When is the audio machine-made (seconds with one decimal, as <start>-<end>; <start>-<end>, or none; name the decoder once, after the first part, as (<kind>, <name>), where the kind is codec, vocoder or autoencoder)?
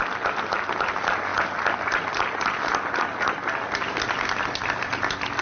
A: none